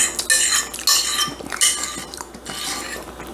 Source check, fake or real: real